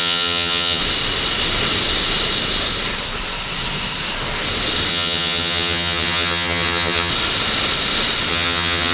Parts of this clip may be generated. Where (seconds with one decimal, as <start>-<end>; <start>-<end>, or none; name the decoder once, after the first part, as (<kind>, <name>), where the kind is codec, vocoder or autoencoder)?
0.0-0.8 (vocoder, HiFi-GAN); 4.9-7.1; 8.3-8.9